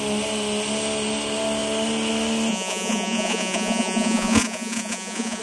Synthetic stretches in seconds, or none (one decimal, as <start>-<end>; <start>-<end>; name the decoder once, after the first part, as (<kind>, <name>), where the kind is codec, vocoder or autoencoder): 2.5-5.4 (vocoder, Vocos)